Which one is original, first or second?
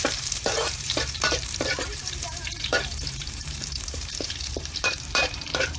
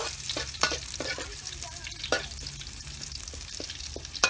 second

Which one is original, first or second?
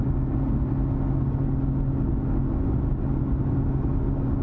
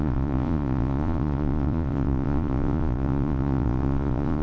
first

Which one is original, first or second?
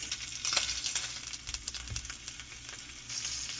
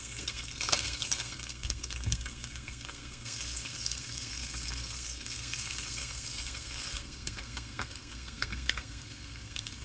first